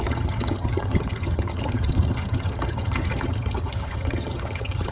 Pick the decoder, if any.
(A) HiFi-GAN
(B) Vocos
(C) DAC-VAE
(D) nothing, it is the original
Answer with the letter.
A